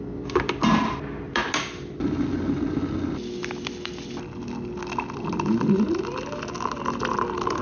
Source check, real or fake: real